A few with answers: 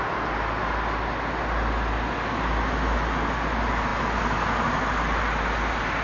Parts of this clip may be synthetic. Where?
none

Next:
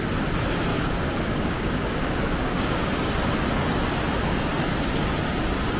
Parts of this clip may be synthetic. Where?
0.7-3.1 (codec, DAC)

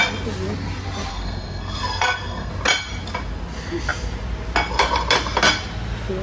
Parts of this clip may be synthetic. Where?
1.1-2.5 (codec, SNAC)

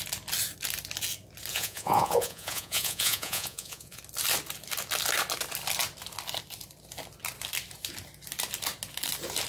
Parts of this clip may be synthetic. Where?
1.5-4.0 (vocoder, Vocos)